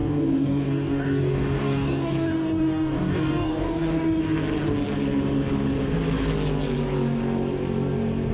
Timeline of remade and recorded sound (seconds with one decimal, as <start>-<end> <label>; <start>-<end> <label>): 0.0-4.2 remade; 4.2-8.3 recorded